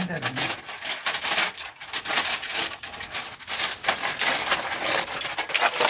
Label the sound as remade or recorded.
recorded